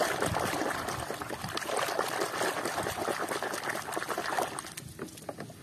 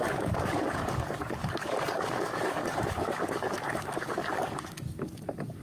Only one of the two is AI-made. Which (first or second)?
second